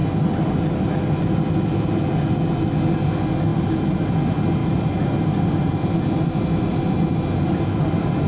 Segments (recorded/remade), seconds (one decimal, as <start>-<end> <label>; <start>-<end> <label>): 0.0-8.3 recorded